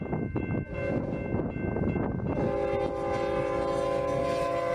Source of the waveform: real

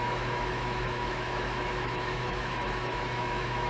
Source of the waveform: fake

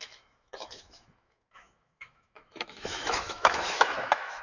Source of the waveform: fake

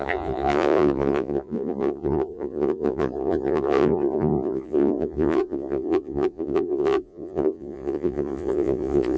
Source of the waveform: fake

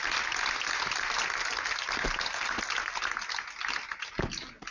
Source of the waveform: real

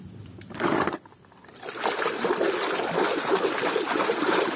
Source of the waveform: real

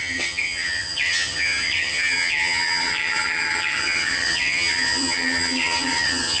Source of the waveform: fake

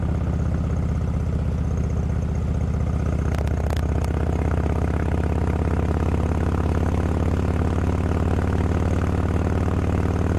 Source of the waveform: real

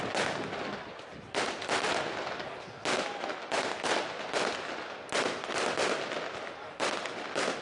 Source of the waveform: real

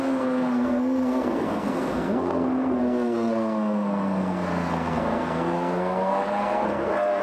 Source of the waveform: fake